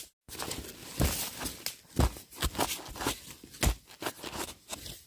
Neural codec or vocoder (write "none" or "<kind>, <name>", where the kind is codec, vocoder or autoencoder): none